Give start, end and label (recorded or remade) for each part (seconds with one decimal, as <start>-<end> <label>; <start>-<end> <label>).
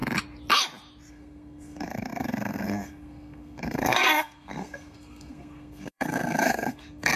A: 0.0-1.1 recorded; 1.1-7.2 remade